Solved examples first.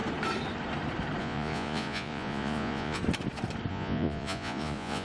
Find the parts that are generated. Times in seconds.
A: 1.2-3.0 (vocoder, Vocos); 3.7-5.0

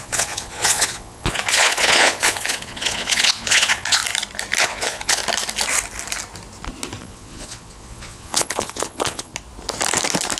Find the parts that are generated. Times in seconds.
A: 0.0-4.0 (vocoder, Vocos); 4.6-5.2; 7.0-9.3

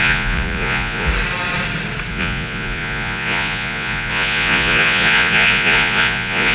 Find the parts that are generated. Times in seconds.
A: 0.0-1.1 (vocoder, Vocos); 2.1-6.5

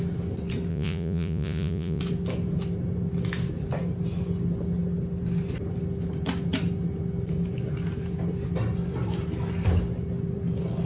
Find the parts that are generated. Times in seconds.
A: 0.7-2.0 (vocoder, Vocos)

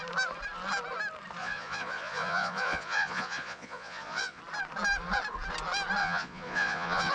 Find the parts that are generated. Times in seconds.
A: 1.4-4.4 (vocoder, Vocos); 6.0-7.1

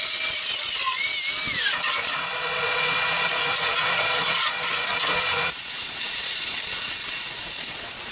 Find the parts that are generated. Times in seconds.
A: 0.0-1.1 (vocoder, Vocos); 1.6-8.1